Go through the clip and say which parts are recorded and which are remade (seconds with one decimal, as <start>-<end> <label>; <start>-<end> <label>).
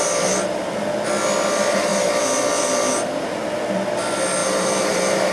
0.0-4.4 recorded; 4.4-5.3 remade